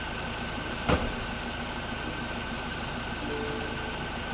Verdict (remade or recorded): recorded